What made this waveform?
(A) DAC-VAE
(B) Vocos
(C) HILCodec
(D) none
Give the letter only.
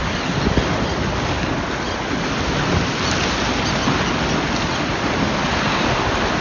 D